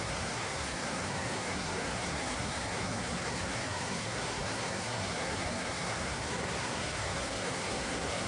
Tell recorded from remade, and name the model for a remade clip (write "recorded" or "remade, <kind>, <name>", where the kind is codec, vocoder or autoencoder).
remade, codec, SNAC